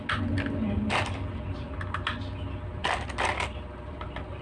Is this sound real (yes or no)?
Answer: yes